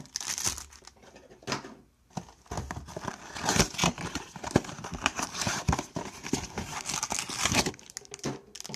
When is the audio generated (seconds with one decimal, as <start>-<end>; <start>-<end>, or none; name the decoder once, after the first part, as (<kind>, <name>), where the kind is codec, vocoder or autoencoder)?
3.8-7.7 (vocoder, BigVGAN v2)